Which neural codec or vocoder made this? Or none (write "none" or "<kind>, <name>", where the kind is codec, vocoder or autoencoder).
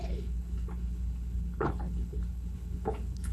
codec, HILCodec